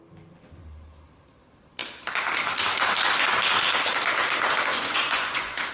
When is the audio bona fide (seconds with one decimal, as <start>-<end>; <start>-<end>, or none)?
0.0-4.7

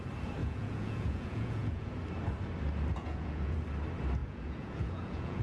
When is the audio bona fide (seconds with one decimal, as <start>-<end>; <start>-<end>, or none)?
0.0-0.4; 1.9-2.9; 3.6-4.2

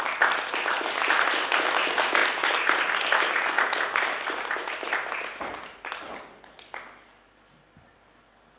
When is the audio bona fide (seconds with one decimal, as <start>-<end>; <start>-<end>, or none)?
0.0-8.6